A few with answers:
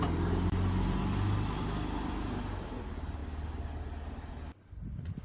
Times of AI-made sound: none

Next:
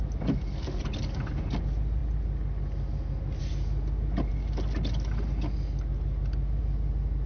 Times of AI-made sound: none

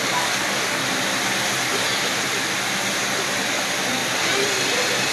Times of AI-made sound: 0.0-0.8 (codec, DAC); 3.5-4.0

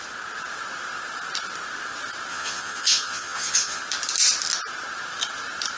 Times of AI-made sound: 2.3-3.8 (vocoder, Vocos)

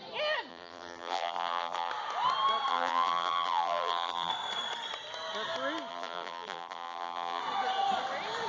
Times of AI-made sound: 0.5-1.9 (vocoder, BigVGAN v2); 2.7-4.3; 5.9-7.4